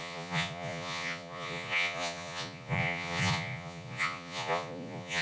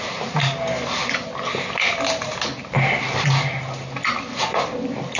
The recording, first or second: second